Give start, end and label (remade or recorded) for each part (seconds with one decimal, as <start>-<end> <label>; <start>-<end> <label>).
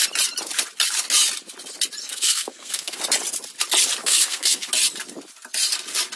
0.0-2.0 recorded; 2.0-3.0 remade; 3.0-4.0 recorded; 4.0-4.7 remade; 4.7-6.2 recorded